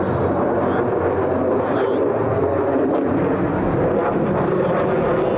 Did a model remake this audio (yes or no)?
no